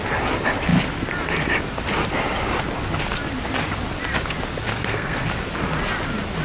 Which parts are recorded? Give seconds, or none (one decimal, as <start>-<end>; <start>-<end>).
0.0-4.7; 5.2-6.4